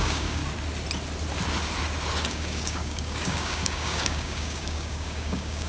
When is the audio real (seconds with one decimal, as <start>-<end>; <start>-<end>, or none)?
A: 0.4-2.3